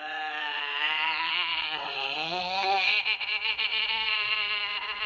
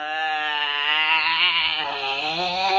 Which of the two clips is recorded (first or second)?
second